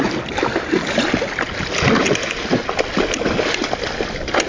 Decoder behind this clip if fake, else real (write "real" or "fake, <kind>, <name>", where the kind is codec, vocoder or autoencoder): real